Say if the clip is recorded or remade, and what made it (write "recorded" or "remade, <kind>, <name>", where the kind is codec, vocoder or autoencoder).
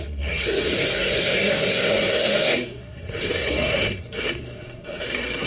remade, codec, SNAC